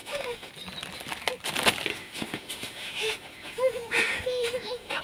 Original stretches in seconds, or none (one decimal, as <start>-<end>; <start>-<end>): 0.5-1.9